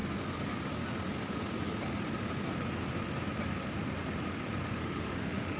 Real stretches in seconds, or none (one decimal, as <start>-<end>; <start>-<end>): 0.0-4.8